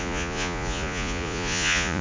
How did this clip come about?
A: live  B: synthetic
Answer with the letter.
B